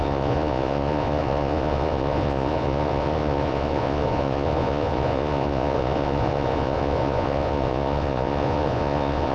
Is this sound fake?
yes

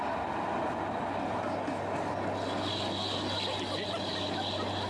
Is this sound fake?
no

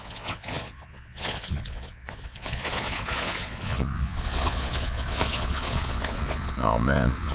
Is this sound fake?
yes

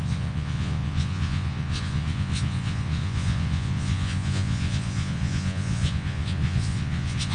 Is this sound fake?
yes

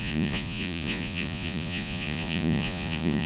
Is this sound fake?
yes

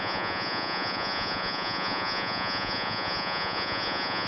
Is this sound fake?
yes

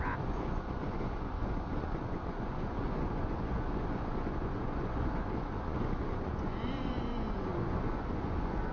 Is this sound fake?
yes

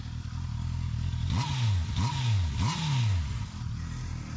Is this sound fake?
no